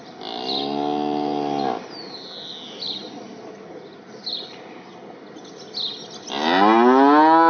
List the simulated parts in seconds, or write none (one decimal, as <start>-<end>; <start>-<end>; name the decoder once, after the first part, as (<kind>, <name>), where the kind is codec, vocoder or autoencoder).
none